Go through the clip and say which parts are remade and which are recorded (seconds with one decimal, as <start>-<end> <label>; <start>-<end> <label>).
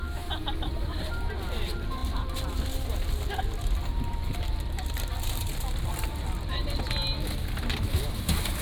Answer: 0.0-6.6 remade; 6.6-7.7 recorded; 7.7-8.6 remade